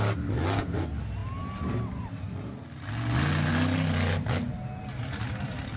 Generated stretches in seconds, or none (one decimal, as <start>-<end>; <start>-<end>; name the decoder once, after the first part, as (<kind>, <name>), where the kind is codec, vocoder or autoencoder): none